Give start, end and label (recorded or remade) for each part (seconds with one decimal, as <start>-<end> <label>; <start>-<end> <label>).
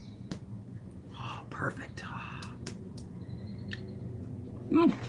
0.0-3.5 remade; 3.5-4.0 recorded; 4.0-5.1 remade